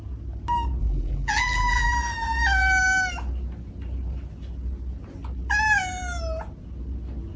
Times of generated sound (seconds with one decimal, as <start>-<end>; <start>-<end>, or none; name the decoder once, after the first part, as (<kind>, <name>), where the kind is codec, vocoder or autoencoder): 0.8-1.9 (vocoder, BigVGAN v2)